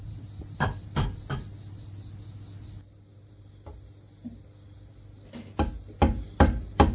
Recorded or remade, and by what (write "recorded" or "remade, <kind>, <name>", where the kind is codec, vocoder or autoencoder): recorded